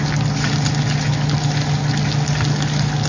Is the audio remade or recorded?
recorded